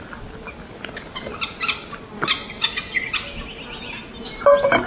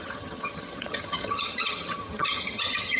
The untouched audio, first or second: first